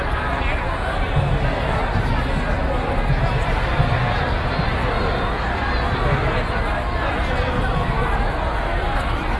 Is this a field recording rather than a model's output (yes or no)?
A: yes